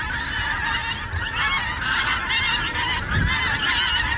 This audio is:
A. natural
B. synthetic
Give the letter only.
A